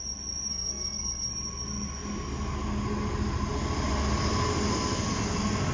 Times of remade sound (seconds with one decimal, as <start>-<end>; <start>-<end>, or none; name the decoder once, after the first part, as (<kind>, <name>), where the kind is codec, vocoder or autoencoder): 0.5-1.3 (codec, SNAC)